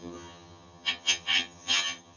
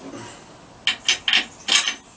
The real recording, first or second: second